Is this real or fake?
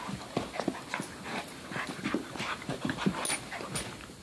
real